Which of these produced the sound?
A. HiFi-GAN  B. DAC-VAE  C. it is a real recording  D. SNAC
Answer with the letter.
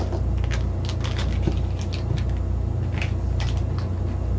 C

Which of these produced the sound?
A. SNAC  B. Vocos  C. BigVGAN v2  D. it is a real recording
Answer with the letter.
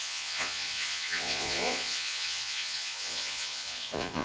B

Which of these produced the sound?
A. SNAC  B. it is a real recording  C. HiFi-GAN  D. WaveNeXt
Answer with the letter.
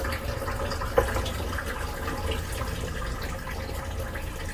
B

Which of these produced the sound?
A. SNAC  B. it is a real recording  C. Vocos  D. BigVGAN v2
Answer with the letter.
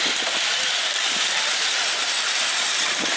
D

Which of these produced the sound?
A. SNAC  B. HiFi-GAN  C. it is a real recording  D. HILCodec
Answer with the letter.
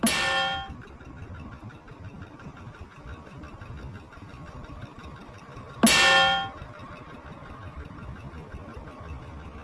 C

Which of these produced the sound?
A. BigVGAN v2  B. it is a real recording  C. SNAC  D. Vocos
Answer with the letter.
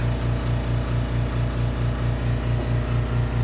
B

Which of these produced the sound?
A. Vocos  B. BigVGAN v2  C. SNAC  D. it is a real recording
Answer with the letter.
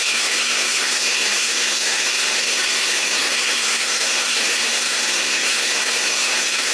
C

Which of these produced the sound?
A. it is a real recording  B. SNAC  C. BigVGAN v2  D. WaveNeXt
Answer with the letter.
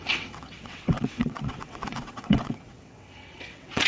D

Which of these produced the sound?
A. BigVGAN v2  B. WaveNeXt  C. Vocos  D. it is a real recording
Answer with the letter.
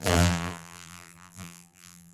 A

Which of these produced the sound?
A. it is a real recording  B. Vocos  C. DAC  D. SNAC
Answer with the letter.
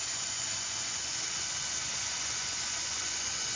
B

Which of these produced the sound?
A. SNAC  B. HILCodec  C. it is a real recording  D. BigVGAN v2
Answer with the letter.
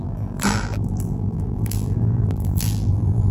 D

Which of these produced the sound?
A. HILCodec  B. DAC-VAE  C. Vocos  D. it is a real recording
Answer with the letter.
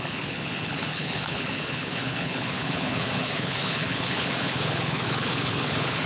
A